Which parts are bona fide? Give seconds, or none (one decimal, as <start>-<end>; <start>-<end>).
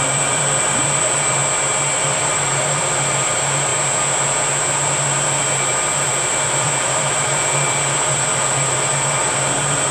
1.4-2.0; 3.7-6.5